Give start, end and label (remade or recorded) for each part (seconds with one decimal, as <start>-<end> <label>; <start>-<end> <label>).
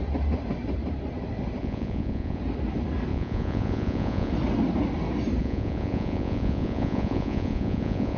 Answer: 0.0-1.6 recorded; 1.6-2.4 remade; 2.4-3.1 recorded; 3.1-4.3 remade; 4.3-5.4 recorded; 5.4-8.2 remade